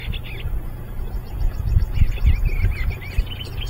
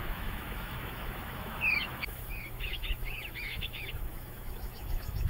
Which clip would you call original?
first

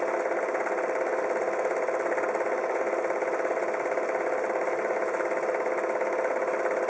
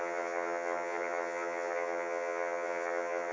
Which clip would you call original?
first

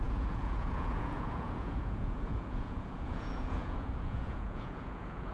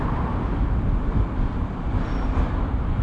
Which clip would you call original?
second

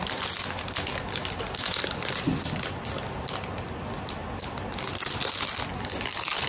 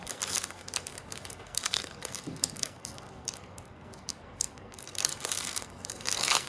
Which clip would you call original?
first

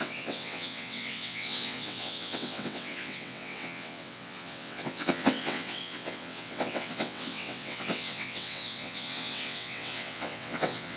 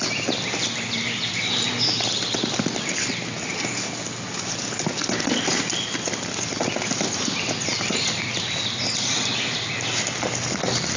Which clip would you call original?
second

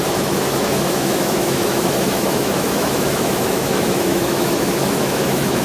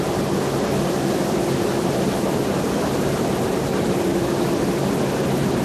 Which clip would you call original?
second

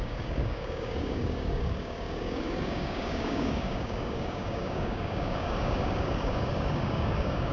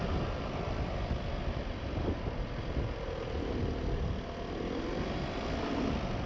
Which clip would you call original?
second